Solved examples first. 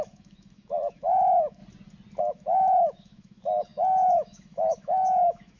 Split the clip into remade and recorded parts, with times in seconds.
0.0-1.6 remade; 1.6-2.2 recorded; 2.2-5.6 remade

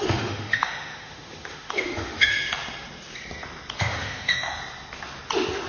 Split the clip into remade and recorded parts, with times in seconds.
0.0-2.3 remade; 2.3-3.8 recorded; 3.8-4.6 remade; 4.6-5.7 recorded